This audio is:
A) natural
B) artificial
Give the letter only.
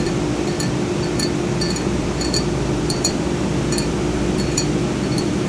B